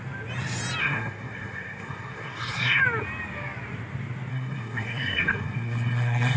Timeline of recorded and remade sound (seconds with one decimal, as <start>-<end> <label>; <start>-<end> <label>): 0.0-0.8 recorded; 0.8-2.8 remade; 2.8-4.3 recorded; 4.3-6.4 remade